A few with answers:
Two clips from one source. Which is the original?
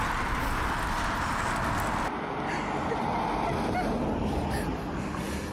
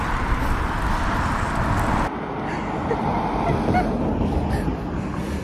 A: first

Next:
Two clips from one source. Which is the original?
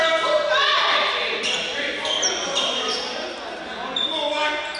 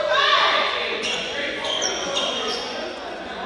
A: first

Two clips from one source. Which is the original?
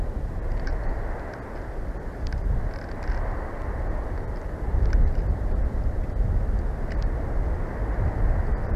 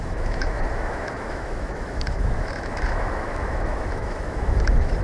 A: first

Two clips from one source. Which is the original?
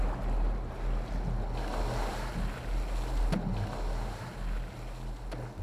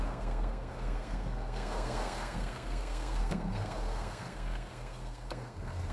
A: first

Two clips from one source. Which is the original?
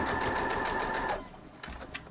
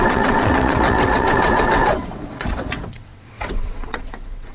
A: first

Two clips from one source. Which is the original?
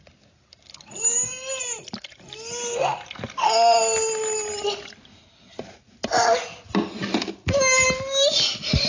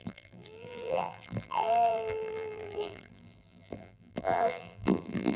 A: first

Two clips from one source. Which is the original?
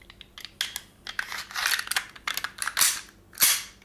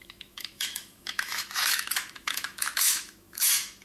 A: first